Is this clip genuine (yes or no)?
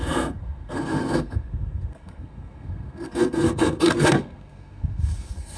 no